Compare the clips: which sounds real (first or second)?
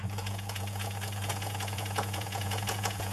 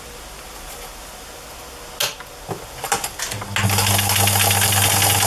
second